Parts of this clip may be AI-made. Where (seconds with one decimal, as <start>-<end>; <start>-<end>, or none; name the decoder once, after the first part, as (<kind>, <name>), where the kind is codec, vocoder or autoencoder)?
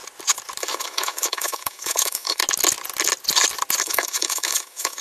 0.6-2.4 (autoencoder, DAC-VAE); 3.8-5.0